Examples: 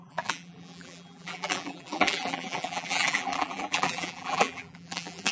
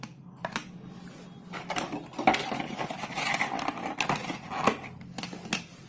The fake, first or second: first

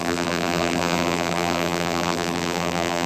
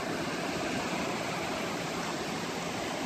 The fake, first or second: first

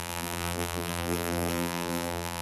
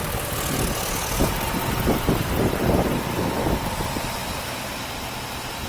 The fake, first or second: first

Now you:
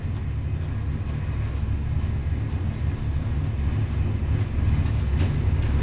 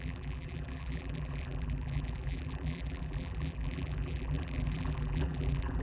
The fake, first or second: second